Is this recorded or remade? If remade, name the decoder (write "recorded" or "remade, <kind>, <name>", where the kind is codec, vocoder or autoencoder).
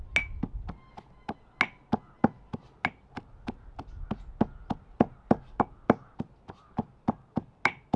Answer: recorded